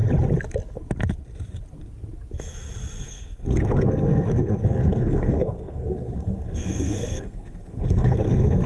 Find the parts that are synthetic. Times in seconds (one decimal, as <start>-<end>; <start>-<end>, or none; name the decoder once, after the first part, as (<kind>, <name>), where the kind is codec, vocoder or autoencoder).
3.0-8.7 (codec, SNAC)